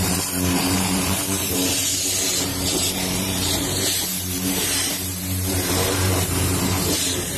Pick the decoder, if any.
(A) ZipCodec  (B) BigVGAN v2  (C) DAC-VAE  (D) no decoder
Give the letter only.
B